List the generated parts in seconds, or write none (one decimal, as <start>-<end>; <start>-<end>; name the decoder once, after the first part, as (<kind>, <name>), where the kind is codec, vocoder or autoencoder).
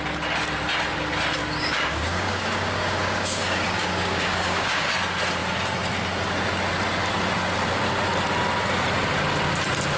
1.4-4.9 (codec, DAC)